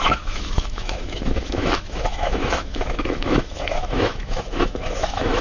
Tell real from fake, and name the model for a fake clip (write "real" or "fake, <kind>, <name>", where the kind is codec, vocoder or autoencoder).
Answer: fake, autoencoder, DAC-VAE